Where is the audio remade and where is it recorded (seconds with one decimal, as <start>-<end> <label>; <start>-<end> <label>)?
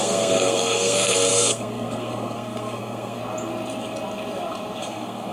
0.0-3.2 remade; 3.2-4.8 recorded; 4.8-5.3 remade